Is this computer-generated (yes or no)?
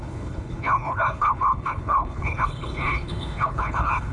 yes